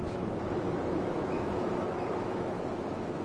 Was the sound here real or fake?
fake